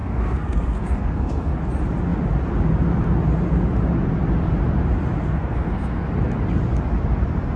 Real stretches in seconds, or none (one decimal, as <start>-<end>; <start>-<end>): 1.5-5.2; 6.0-7.6

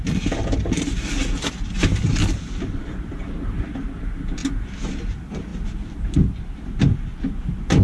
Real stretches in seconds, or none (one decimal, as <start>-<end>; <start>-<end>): 0.0-7.8

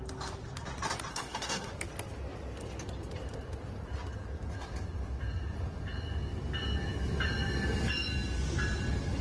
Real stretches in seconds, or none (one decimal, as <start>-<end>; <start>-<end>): 0.0-1.1; 1.7-9.2